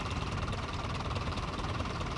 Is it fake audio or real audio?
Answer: fake